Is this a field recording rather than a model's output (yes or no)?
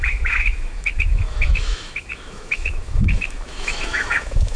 no